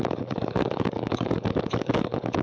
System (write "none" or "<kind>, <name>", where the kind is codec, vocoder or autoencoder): codec, DAC